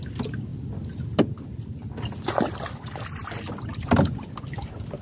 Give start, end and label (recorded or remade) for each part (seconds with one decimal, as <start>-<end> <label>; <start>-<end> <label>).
0.0-5.0 recorded